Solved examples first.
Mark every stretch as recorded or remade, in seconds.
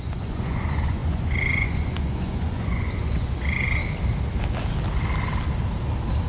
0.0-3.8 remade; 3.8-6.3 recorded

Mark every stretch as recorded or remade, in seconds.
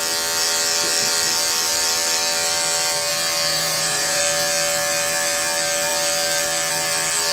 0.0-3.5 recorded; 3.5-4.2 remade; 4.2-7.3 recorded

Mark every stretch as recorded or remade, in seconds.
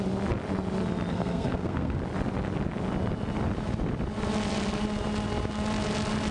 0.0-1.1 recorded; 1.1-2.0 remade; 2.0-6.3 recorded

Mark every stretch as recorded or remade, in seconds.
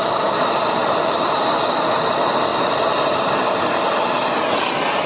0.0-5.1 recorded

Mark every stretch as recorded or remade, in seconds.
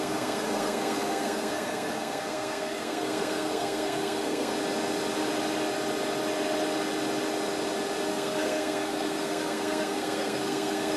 0.0-4.5 remade; 4.5-8.1 recorded; 8.1-11.0 remade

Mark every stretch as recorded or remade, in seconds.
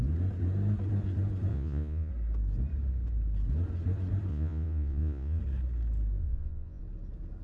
0.0-1.5 recorded; 1.5-2.1 remade; 2.1-4.3 recorded; 4.3-5.4 remade; 5.4-6.2 recorded; 6.2-6.8 remade; 6.8-7.4 recorded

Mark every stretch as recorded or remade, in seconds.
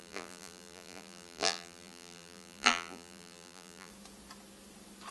0.0-3.9 remade; 3.9-5.1 recorded